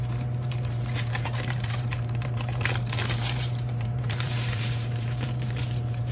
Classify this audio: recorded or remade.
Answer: remade